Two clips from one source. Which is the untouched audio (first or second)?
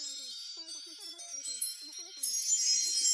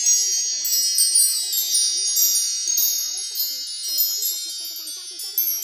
second